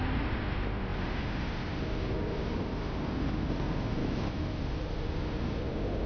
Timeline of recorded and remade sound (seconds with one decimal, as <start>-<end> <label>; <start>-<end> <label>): 0.0-4.0 recorded; 4.0-4.6 remade; 4.6-6.1 recorded